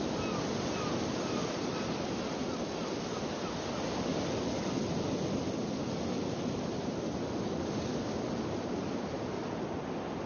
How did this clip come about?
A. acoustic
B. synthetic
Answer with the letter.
A